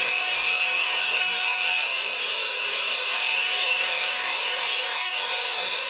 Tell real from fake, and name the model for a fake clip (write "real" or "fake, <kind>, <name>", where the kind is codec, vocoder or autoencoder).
fake, codec, DAC